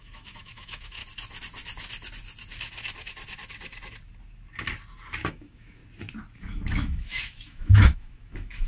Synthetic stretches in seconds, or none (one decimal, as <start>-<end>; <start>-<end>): 0.0-1.0; 5.3-5.8; 6.4-8.7